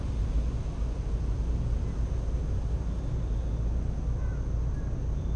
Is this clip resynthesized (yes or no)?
no